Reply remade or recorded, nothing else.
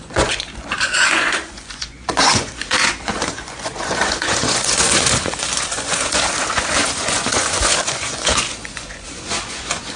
remade